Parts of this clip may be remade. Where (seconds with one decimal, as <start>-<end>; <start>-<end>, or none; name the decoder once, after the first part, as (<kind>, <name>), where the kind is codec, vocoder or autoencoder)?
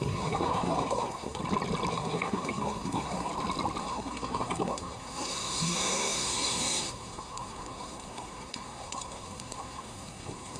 0.0-1.4 (codec, SNAC); 1.9-3.3; 3.8-10.6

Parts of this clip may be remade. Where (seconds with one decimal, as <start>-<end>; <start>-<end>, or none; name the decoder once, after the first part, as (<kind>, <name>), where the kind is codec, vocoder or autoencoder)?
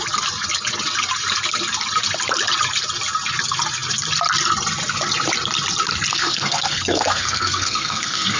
6.1-8.4 (codec, SNAC)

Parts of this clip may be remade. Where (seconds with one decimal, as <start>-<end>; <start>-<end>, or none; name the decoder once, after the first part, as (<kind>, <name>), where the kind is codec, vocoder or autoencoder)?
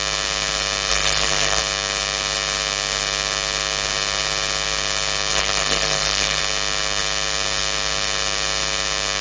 0.9-1.6 (codec, SNAC); 5.3-6.4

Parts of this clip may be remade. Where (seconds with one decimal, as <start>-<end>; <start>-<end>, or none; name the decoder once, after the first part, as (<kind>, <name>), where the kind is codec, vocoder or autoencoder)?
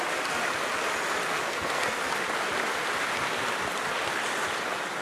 1.3-2.0 (codec, SNAC)